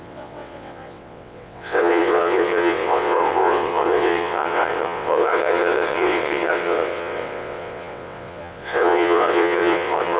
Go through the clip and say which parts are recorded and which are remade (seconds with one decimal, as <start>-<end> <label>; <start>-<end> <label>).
0.0-10.2 remade